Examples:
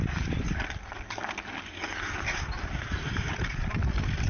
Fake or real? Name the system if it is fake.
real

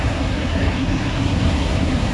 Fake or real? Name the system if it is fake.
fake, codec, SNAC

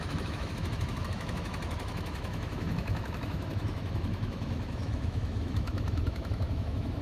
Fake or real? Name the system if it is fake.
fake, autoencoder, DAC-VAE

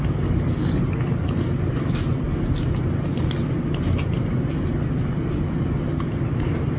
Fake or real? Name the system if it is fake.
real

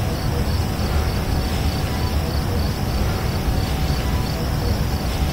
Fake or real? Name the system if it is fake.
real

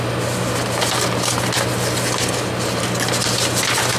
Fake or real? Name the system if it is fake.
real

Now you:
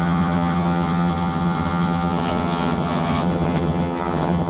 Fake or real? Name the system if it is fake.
fake, vocoder, HiFi-GAN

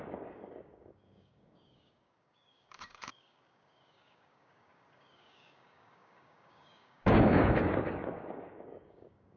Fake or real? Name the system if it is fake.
fake, codec, DAC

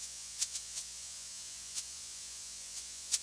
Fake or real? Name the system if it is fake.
fake, vocoder, Vocos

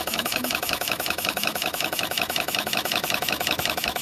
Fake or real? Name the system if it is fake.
fake, autoencoder, DAC-VAE